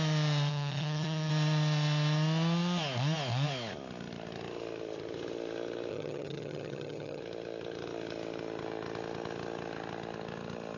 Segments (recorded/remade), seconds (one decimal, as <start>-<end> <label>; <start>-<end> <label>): 0.0-0.5 recorded; 0.5-1.3 remade; 1.3-5.9 recorded; 5.9-7.2 remade; 7.2-10.8 recorded